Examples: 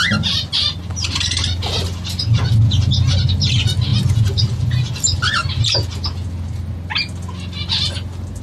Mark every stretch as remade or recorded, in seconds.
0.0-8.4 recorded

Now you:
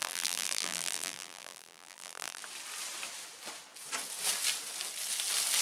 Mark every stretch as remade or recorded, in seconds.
0.0-2.4 remade; 2.4-5.6 recorded

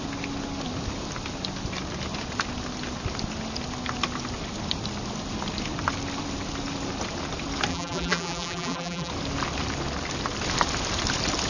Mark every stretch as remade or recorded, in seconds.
0.0-7.7 recorded; 7.7-9.1 remade; 9.1-11.5 recorded

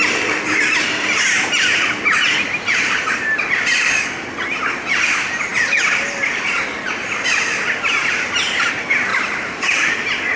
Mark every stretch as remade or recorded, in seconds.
0.0-5.5 recorded; 5.5-6.5 remade; 6.5-9.1 recorded; 9.1-9.9 remade; 9.9-10.4 recorded

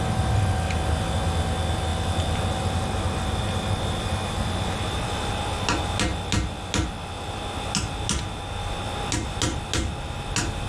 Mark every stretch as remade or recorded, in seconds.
0.0-1.9 recorded; 1.9-5.3 remade; 5.3-10.7 recorded

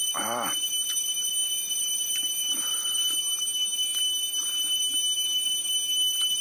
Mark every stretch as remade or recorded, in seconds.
0.0-1.4 recorded; 1.4-3.2 remade; 3.2-6.4 recorded